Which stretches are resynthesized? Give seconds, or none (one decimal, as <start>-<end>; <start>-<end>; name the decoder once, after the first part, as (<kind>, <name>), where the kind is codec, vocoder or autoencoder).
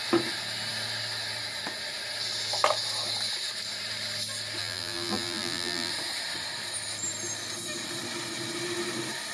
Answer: 4.6-5.9 (vocoder, BigVGAN v2)